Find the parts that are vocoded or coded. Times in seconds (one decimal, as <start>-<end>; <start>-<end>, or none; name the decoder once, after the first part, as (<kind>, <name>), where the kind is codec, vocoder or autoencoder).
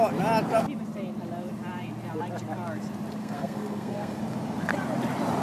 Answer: 3.2-4.2 (codec, SNAC)